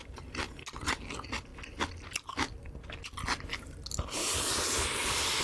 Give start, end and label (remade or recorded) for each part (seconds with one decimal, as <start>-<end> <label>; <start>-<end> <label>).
0.0-0.5 remade; 0.5-4.2 recorded; 4.2-5.4 remade